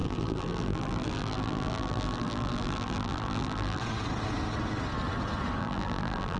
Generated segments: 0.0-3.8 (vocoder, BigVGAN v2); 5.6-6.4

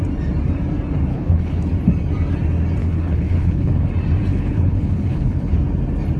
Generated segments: 1.1-1.6 (codec, HILCodec); 2.8-3.9; 4.3-5.5

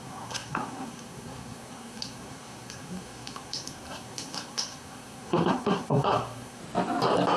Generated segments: 0.0-6.6 (codec, SNAC)

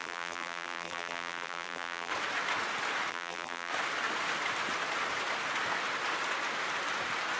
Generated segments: 0.0-2.1 (vocoder, BigVGAN v2); 3.1-3.7